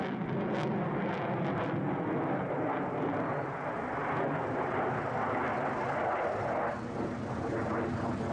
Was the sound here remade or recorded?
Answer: recorded